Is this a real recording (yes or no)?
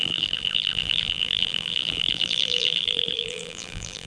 no